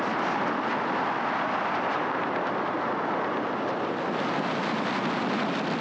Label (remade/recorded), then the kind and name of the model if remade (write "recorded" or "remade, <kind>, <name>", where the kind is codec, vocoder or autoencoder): recorded